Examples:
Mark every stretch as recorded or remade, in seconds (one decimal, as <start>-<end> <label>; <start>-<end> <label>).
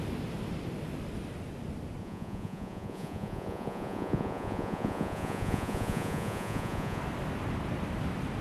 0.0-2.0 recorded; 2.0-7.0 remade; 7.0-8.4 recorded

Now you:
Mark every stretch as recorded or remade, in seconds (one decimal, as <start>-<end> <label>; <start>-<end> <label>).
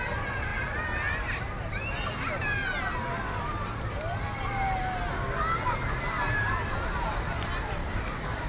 0.0-7.8 recorded; 7.8-8.5 remade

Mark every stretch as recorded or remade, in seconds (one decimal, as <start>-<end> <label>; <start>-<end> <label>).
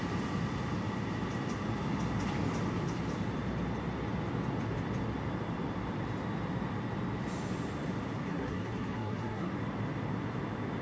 0.0-8.3 recorded; 8.3-9.5 remade; 9.5-10.8 recorded